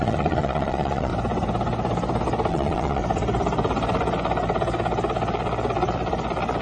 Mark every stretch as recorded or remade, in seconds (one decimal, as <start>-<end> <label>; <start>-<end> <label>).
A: 0.0-1.1 remade; 1.1-2.5 recorded; 2.5-3.0 remade; 3.0-6.6 recorded